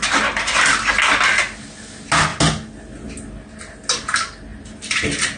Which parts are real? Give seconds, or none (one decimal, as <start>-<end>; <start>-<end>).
0.0-5.4